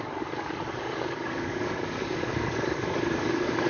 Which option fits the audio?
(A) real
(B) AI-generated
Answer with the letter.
B